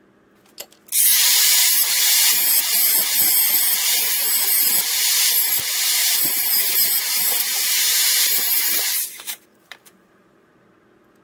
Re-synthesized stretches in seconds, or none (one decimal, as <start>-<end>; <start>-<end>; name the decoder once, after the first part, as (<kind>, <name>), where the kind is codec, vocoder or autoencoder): 1.1-4.7 (vocoder, BigVGAN v2); 6.0-10.5

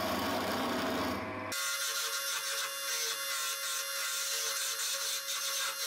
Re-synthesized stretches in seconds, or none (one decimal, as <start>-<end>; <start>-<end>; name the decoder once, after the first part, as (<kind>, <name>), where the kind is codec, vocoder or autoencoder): none

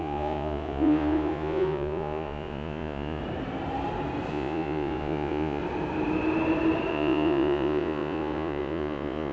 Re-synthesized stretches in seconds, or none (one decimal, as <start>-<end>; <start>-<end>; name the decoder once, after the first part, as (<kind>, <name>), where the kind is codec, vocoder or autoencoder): 0.0-3.2 (vocoder, Vocos); 4.3-5.6; 6.9-9.3

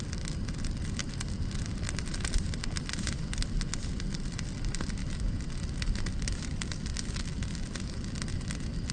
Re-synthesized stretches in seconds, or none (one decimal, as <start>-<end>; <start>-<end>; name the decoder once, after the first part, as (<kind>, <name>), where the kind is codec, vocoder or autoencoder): none

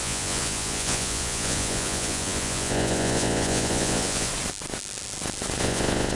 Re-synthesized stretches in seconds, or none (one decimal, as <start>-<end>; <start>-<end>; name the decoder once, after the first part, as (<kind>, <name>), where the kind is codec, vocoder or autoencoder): 0.0-4.3 (vocoder, Vocos); 5.6-6.2